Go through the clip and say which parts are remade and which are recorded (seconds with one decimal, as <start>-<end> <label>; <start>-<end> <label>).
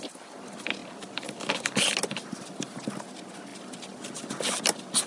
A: 0.0-5.1 recorded